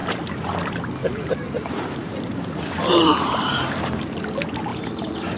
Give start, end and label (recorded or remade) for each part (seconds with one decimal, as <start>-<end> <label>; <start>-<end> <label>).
0.0-0.6 remade; 0.6-1.0 recorded; 1.0-4.2 remade; 4.2-4.7 recorded; 4.7-5.4 remade